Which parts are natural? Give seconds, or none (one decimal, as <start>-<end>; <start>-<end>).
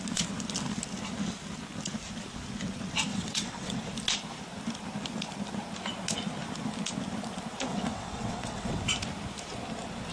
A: 0.0-3.1; 3.8-7.7; 8.8-10.1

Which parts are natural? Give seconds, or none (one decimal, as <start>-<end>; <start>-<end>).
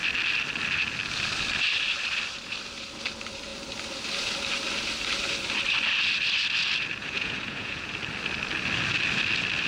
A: 0.0-7.0; 7.9-9.7